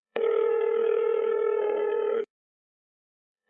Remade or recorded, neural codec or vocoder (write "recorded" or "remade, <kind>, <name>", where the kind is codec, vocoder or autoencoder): remade, codec, SNAC